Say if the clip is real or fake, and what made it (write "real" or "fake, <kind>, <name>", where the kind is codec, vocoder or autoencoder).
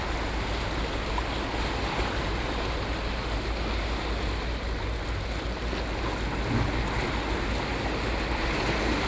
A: real